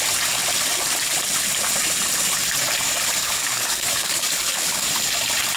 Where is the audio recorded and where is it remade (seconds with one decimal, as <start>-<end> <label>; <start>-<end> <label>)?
0.0-3.2 recorded; 3.2-4.9 remade; 4.9-5.6 recorded